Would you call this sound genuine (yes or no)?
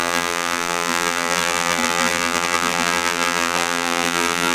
no